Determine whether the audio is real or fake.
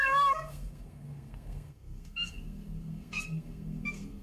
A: fake